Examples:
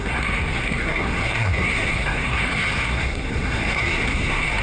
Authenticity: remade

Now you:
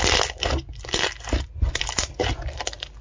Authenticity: recorded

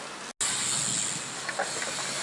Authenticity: recorded